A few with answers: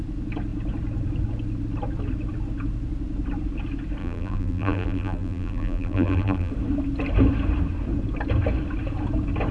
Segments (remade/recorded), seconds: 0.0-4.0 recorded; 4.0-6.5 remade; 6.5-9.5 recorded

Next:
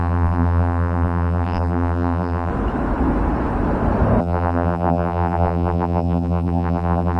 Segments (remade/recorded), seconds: 0.0-2.5 remade; 2.5-4.2 recorded; 4.2-7.2 remade